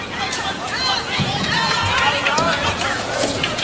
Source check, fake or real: fake